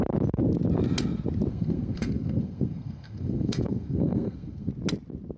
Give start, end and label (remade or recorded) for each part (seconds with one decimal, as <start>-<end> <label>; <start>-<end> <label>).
0.0-1.5 recorded; 1.5-4.7 remade; 4.7-5.4 recorded

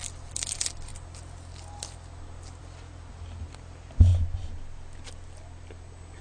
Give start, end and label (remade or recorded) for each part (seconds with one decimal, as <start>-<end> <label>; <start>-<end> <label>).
0.0-6.2 recorded

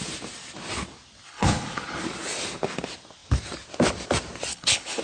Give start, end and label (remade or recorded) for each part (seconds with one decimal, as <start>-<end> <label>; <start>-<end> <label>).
0.0-1.3 recorded; 1.3-2.0 remade; 2.0-4.5 recorded; 4.5-5.0 remade

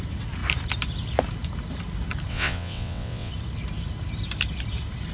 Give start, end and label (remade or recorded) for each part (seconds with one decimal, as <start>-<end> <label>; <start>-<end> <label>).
0.0-2.3 recorded; 2.3-3.3 remade; 3.3-5.1 recorded